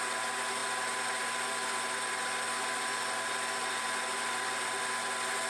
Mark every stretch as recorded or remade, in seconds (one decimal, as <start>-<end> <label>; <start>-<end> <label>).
0.0-5.5 recorded